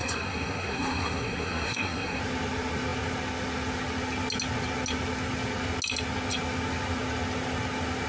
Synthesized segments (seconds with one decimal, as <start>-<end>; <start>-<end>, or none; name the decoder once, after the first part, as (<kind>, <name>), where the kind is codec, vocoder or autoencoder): 0.0-2.2 (codec, SNAC)